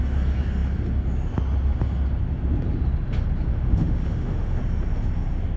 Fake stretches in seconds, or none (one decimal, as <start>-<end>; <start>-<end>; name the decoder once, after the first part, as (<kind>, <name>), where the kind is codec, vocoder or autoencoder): 3.5-4.6 (autoencoder, DAC-VAE)